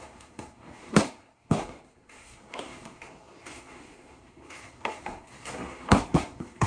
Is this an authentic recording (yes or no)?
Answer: no